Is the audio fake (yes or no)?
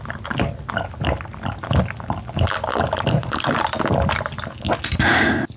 no